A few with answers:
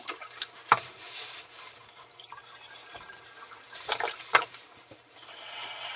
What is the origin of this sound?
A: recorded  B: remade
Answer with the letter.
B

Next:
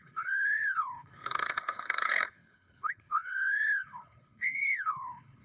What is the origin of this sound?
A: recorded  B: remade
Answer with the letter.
B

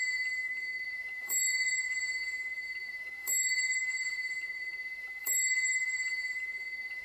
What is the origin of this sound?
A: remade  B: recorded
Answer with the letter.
A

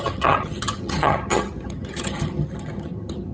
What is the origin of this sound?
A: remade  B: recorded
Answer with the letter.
A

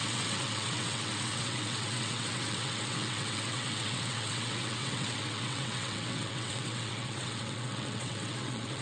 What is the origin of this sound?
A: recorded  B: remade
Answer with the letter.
B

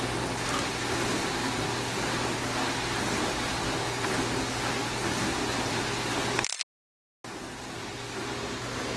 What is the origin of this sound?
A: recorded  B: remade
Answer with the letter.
A